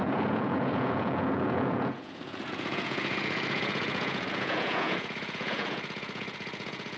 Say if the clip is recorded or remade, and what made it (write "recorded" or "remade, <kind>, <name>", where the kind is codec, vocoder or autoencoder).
remade, vocoder, Vocos